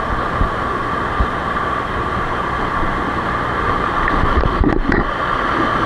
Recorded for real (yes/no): yes